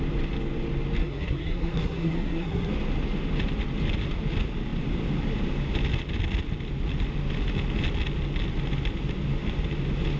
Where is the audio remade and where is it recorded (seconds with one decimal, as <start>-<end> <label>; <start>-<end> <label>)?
0.0-1.0 recorded; 1.0-2.7 remade; 2.7-10.2 recorded